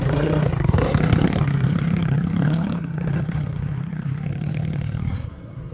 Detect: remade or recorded remade